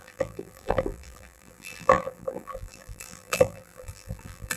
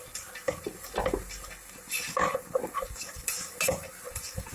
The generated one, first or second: first